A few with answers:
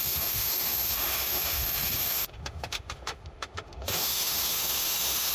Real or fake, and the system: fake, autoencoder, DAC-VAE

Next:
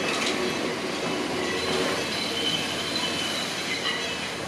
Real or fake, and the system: real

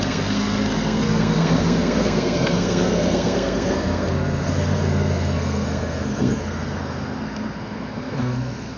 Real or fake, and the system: fake, codec, SNAC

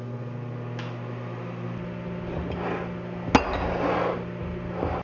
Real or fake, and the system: real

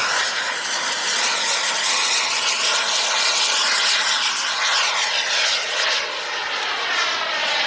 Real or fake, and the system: real